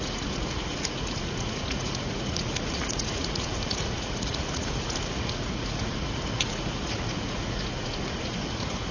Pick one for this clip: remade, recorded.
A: remade